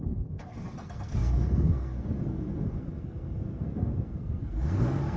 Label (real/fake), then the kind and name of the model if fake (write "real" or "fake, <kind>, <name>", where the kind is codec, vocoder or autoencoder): fake, codec, SNAC